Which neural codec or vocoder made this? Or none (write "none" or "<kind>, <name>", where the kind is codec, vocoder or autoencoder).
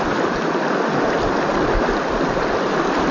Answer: none